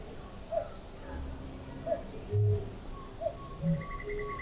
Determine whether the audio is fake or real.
real